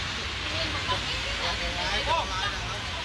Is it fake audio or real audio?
real